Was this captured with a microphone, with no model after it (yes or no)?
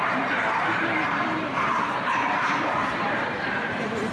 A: no